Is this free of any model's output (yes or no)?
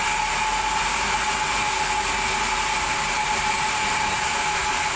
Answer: yes